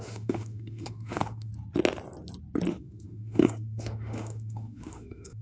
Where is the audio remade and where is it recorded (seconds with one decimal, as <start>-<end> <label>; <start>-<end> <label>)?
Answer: 0.0-1.5 remade; 1.5-2.7 recorded; 2.7-5.4 remade